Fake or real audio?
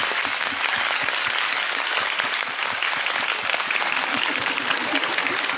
fake